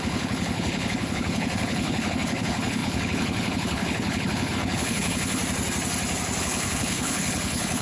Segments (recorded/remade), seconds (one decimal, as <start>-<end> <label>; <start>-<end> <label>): 0.0-5.4 remade; 5.4-6.4 recorded; 6.4-7.8 remade